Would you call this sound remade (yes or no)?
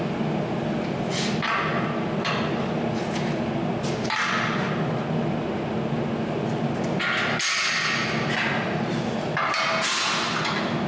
no